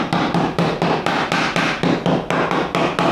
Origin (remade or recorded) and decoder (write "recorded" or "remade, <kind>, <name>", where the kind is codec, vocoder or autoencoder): recorded